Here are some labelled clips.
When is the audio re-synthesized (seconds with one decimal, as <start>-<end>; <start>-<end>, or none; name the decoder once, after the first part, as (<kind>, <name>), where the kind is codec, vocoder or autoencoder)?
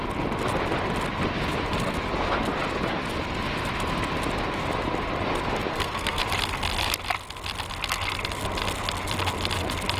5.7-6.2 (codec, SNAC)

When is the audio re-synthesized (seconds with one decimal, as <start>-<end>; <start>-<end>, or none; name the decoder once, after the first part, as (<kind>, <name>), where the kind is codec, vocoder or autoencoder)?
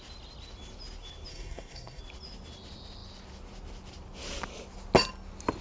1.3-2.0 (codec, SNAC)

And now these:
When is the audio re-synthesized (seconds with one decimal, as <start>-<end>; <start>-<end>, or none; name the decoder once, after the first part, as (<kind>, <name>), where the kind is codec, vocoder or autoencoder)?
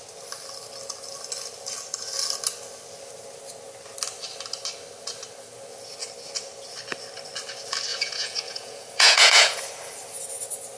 7.9-9.6 (vocoder, Vocos)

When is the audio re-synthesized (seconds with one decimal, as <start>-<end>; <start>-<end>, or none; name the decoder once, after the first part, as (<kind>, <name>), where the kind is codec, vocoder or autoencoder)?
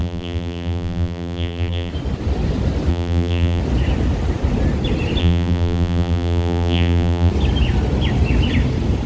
0.0-1.9 (vocoder, BigVGAN v2); 2.9-3.6; 5.2-7.3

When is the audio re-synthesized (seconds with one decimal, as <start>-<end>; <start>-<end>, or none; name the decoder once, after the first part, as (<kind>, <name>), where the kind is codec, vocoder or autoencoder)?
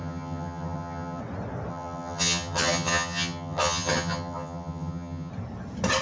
0.0-1.2 (vocoder, HiFi-GAN); 1.7-5.3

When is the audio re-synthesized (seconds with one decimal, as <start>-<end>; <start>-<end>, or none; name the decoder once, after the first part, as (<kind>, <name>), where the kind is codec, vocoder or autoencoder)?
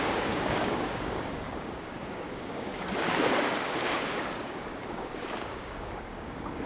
0.0-6.7 (codec, DAC)